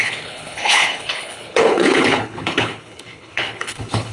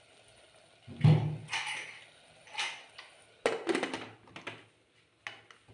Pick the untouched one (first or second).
second